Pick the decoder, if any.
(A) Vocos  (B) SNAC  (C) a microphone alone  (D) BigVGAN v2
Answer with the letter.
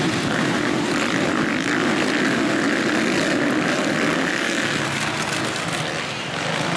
C